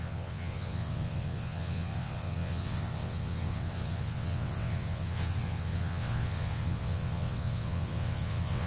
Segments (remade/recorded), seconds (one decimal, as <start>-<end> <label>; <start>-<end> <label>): 0.0-8.7 remade